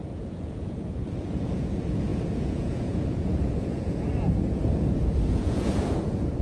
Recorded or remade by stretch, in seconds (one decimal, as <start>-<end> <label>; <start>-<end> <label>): 0.0-6.4 remade